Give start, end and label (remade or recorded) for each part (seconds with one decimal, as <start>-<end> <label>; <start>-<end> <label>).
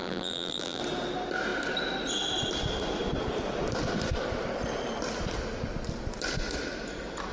0.0-0.8 remade; 0.8-7.3 recorded